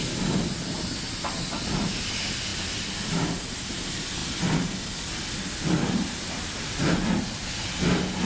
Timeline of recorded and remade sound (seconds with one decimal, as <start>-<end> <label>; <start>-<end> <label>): 0.0-8.2 recorded